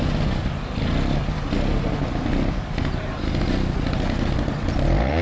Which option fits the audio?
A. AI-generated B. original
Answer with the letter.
B